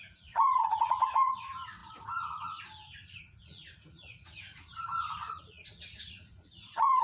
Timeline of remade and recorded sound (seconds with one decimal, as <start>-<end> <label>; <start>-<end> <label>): 0.0-7.0 remade